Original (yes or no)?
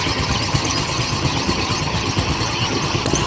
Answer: no